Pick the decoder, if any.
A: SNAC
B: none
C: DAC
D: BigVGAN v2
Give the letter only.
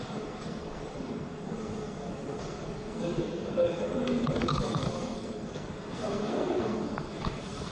A